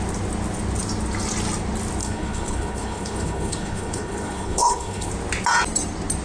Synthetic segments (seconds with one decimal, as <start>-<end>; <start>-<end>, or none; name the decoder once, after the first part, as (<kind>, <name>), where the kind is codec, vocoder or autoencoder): 2.0-5.1 (codec, HILCodec)